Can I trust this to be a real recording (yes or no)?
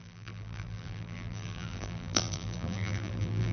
no